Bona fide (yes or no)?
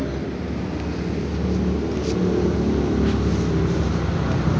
yes